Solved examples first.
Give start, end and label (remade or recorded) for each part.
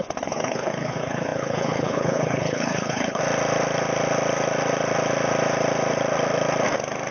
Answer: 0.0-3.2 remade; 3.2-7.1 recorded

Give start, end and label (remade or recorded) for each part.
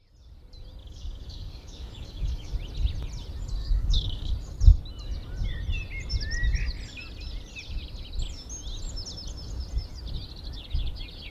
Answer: 0.0-0.8 recorded; 0.8-2.5 remade; 2.5-3.6 recorded; 3.6-4.3 remade; 4.3-11.3 recorded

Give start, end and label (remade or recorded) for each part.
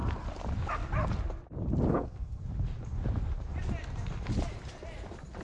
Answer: 0.0-1.9 recorded; 1.9-2.4 remade; 2.4-5.4 recorded